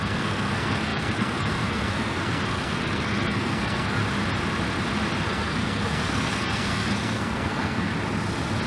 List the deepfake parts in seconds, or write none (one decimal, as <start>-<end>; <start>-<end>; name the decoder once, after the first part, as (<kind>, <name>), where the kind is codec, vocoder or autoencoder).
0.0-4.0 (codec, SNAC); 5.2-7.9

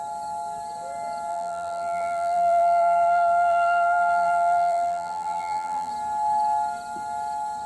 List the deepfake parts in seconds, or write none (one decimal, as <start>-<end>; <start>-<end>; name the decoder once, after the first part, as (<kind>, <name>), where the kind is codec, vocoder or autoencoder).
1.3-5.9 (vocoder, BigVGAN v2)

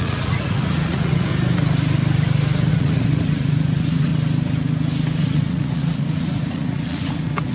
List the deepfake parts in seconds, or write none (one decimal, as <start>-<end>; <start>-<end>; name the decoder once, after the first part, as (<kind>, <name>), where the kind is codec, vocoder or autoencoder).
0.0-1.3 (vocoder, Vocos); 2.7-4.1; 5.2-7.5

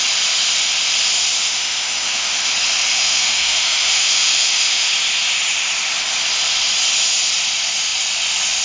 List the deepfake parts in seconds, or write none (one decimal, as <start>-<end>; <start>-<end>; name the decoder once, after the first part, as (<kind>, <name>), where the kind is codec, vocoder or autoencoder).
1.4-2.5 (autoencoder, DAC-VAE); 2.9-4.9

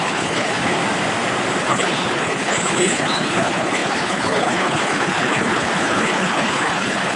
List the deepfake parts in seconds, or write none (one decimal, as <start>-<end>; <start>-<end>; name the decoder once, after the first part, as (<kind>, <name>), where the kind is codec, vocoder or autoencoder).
0.0-0.8 (codec, HILCodec); 1.6-7.2